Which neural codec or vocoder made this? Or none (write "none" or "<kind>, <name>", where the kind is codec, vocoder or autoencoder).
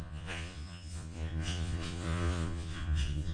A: vocoder, Vocos